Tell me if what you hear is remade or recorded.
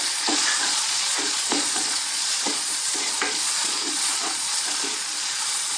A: remade